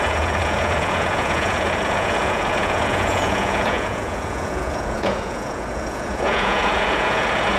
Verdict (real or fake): fake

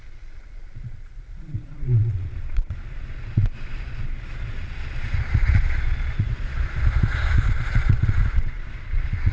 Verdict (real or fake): fake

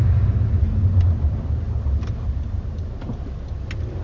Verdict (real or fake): real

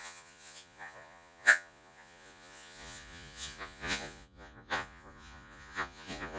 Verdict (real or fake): fake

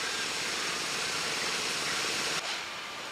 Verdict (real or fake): real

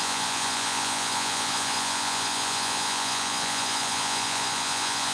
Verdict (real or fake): fake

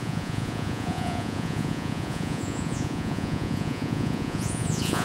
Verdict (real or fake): fake